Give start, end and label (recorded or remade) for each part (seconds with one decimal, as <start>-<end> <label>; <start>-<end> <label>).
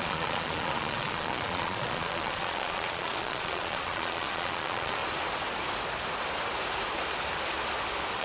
0.0-5.0 remade; 5.0-8.2 recorded